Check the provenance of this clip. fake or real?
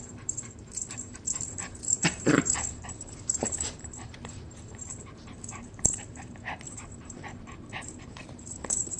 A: fake